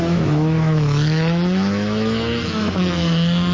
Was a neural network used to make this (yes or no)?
yes